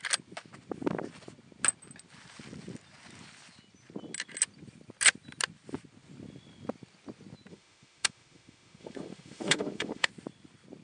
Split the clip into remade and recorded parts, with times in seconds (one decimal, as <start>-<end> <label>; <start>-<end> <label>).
0.0-7.5 recorded; 7.5-10.1 remade; 10.1-10.8 recorded